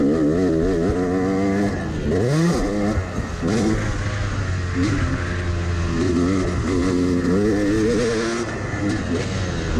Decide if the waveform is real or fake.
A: real